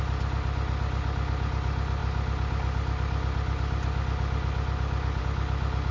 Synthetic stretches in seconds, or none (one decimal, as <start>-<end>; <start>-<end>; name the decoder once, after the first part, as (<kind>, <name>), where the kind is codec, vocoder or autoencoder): none